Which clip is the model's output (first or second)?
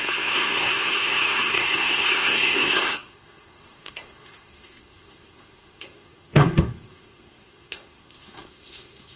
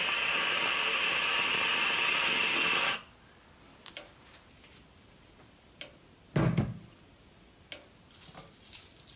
first